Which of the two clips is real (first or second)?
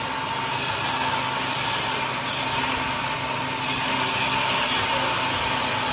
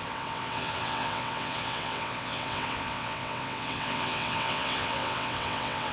first